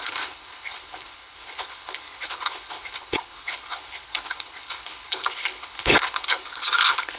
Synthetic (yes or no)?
yes